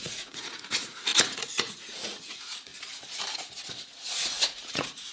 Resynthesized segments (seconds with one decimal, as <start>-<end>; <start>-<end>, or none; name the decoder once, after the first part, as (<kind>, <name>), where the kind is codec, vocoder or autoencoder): 0.0-2.7 (vocoder, Vocos); 3.7-5.1